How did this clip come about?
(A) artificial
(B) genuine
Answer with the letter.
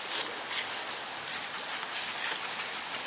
B